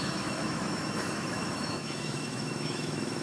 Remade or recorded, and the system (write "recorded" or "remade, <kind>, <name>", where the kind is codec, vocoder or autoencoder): remade, autoencoder, DAC-VAE